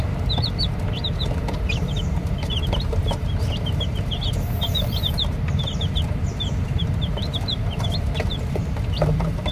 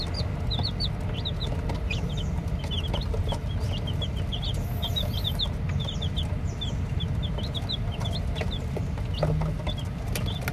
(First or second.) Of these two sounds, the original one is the second